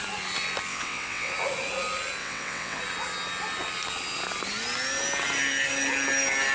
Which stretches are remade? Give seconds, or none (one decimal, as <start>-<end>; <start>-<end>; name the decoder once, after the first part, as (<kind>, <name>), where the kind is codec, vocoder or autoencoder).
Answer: 0.7-1.3 (vocoder, WaveNeXt); 2.2-2.8